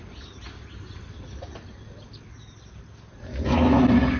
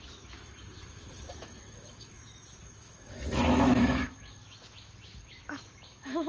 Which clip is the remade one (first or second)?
second